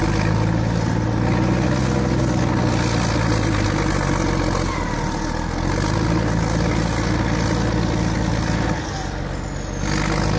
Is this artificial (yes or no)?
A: no